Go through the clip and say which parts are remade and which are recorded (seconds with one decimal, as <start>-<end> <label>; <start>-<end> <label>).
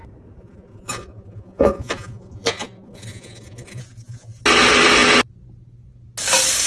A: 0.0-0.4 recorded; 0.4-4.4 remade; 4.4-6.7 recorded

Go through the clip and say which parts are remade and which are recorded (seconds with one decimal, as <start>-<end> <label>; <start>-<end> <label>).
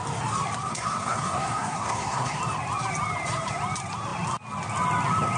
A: 0.0-0.7 recorded; 0.7-2.4 remade; 2.4-5.4 recorded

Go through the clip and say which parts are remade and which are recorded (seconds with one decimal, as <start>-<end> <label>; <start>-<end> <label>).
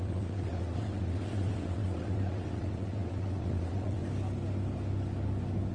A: 0.0-4.0 remade; 4.0-5.7 recorded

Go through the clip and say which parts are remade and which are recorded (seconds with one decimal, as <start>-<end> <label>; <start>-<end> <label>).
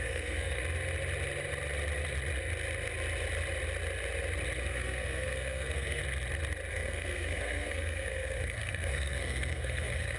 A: 0.0-0.6 remade; 0.6-4.6 recorded; 4.6-6.0 remade; 6.0-6.7 recorded; 6.7-10.2 remade